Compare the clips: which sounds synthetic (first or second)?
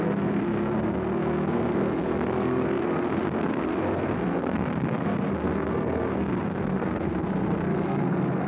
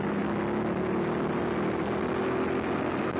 first